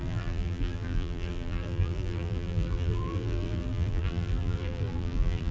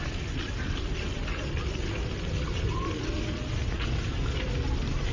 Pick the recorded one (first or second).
second